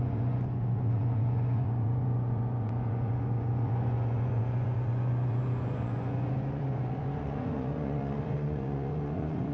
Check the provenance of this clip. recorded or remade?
remade